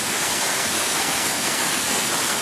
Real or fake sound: fake